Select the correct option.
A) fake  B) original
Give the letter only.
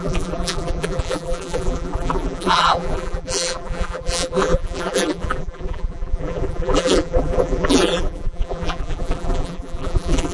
A